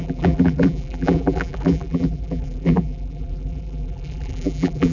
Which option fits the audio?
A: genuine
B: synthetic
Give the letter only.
B